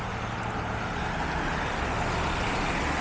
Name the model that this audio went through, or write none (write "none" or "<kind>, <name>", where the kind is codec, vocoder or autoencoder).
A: none